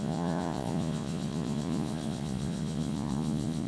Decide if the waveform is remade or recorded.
remade